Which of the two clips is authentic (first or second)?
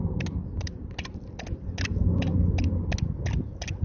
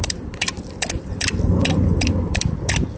first